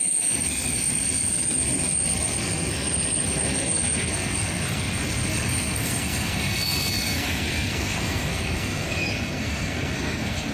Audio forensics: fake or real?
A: fake